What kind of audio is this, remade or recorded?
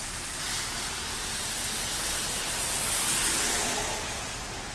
recorded